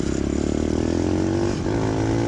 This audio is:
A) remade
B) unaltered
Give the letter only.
B